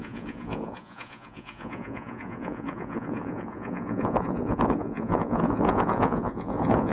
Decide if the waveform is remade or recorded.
remade